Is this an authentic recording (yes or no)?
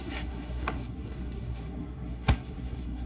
no